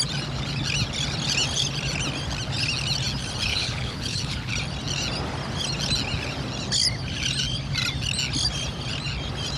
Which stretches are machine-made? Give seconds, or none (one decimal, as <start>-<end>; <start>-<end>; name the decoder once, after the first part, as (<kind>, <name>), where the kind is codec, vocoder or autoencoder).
3.5-4.5 (codec, HILCodec)